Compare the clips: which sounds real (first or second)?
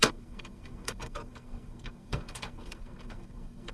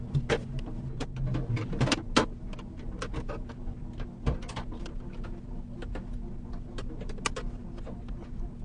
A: second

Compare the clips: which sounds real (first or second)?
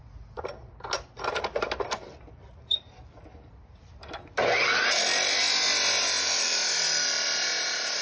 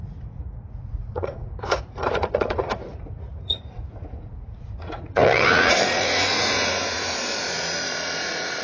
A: first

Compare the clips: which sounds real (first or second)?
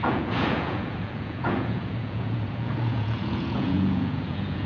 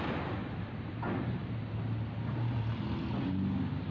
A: second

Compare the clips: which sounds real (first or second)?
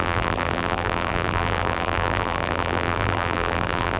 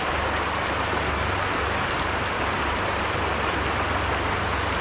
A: second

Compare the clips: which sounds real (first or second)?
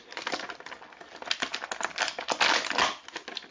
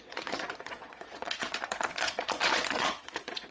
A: first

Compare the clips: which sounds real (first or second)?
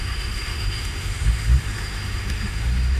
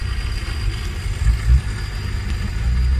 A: second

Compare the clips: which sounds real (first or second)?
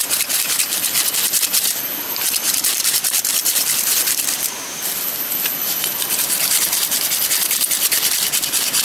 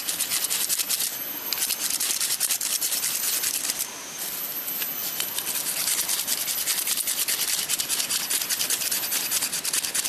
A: second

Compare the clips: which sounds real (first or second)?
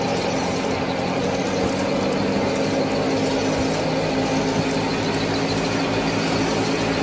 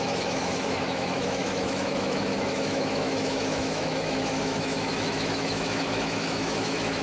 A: first